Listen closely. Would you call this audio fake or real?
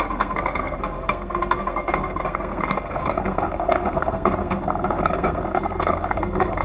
fake